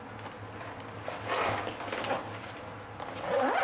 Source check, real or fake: real